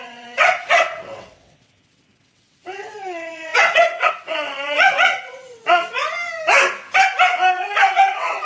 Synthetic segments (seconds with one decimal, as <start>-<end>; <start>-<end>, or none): 0.0-6.0; 7.5-8.4